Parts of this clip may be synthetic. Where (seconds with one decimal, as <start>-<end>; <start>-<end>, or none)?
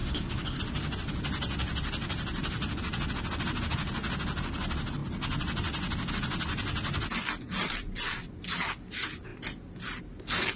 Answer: 0.0-0.6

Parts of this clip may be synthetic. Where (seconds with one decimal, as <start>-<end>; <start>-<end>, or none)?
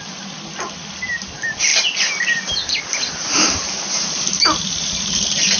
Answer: none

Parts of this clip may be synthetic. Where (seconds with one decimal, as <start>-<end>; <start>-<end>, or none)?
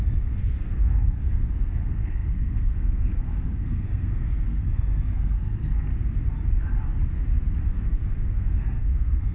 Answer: 0.0-5.9; 7.7-9.3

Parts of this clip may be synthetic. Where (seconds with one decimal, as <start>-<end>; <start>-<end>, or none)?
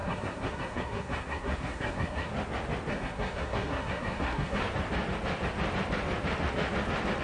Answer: 0.0-2.3; 2.9-4.6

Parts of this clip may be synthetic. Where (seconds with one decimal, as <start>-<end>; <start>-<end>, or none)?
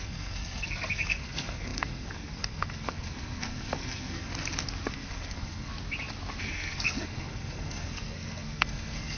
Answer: 0.0-4.3; 4.9-5.7; 6.4-9.2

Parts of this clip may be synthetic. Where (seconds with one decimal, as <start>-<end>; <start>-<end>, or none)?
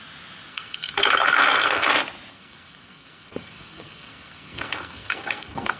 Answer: 0.5-1.9; 2.3-5.8